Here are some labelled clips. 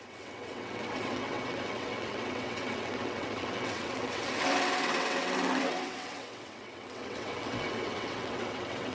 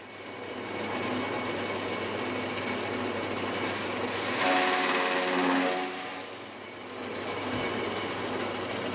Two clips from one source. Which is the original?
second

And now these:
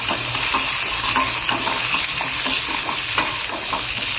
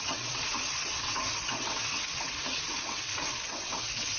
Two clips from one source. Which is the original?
first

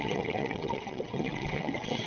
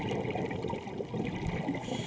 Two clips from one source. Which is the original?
second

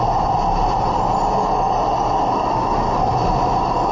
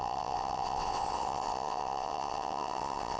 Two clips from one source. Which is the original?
first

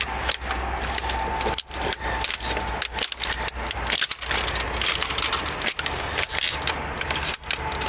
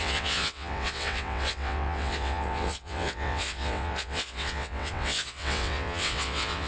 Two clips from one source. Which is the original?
first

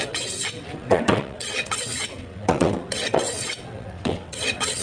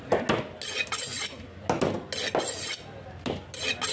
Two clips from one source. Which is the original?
second